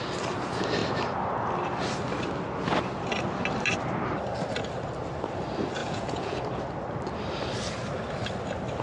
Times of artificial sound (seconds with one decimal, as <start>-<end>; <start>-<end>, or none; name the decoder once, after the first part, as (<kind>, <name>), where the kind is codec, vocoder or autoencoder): 5.8-6.4 (vocoder, Vocos)